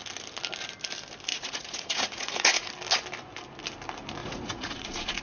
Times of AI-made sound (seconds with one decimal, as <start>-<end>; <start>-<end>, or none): 1.3-2.7; 4.2-5.2